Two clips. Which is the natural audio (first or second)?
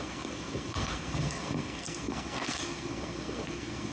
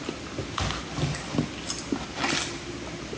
second